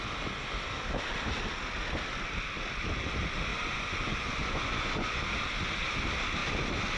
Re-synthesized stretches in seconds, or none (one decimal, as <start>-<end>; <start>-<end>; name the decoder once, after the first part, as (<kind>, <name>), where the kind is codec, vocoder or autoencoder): 3.5-5.2 (vocoder, Vocos)